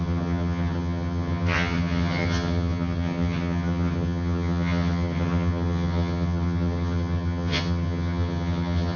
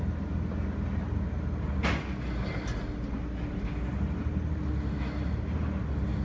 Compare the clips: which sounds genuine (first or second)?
second